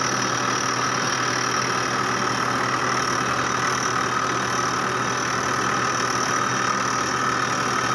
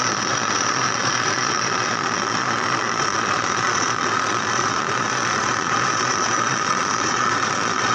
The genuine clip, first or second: first